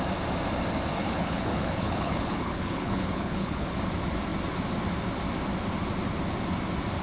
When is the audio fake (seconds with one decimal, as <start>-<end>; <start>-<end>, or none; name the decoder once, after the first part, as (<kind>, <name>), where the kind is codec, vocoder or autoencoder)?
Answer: 1.0-3.8 (codec, HILCodec)